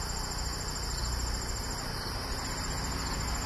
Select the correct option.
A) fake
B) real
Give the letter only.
B